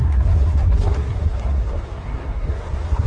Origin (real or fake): fake